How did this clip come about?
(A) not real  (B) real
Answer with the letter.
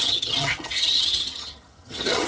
A